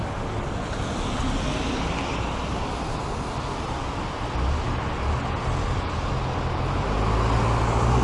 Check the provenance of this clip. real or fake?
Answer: real